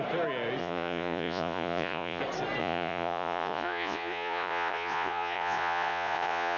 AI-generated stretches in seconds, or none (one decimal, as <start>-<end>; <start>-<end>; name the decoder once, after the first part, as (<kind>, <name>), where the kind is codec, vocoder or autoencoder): 0.6-2.2 (vocoder, Vocos); 2.6-6.6